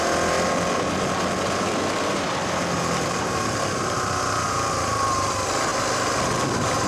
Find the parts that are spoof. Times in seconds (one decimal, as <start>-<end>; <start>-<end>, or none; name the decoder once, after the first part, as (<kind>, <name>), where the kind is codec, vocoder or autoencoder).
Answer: 5.7-6.3 (vocoder, BigVGAN v2)